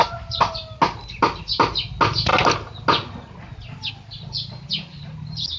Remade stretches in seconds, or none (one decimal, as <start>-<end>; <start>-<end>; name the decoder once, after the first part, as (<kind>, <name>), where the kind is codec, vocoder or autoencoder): none